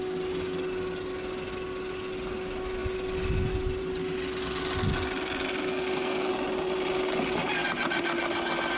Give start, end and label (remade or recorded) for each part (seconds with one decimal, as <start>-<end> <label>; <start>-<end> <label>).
0.0-5.7 recorded; 5.7-6.3 remade; 6.3-8.8 recorded